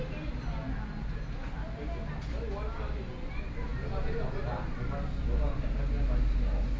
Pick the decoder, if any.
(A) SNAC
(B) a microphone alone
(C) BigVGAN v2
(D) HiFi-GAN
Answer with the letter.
B